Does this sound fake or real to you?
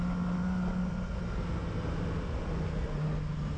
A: real